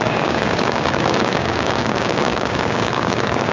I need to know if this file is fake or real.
fake